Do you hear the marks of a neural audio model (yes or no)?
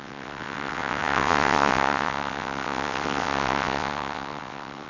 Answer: yes